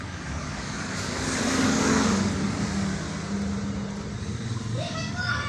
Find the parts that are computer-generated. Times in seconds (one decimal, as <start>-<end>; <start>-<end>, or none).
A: 0.0-2.9; 4.1-5.5